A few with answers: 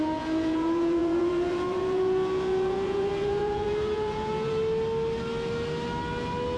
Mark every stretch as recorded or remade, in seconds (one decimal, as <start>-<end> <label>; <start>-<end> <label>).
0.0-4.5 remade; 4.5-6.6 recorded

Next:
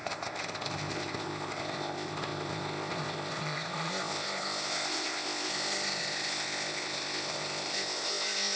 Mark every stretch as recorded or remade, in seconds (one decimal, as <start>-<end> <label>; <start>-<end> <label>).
0.0-8.6 remade

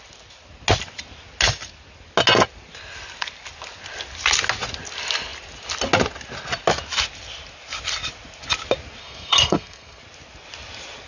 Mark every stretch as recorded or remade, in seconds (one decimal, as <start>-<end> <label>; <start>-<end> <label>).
0.0-9.0 recorded; 9.0-10.0 remade; 10.0-11.1 recorded

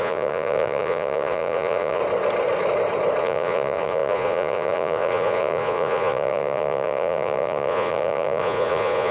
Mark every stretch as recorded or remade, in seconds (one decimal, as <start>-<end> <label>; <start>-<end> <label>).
0.0-2.0 remade; 2.0-3.2 recorded; 3.2-9.1 remade

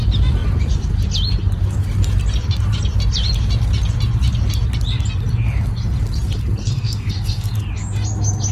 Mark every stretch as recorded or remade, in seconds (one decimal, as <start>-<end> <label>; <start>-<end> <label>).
0.0-6.6 recorded; 6.6-7.5 remade; 7.5-8.5 recorded